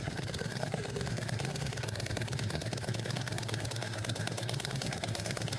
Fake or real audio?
fake